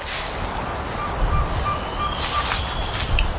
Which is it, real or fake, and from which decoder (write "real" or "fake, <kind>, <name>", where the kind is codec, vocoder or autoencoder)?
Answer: real